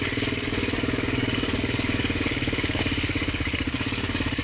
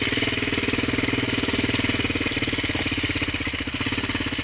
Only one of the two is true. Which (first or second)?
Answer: second